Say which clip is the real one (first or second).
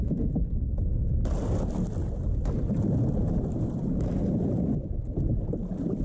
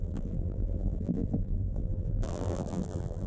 first